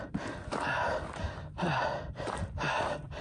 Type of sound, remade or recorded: recorded